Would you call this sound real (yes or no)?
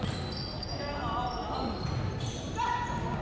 yes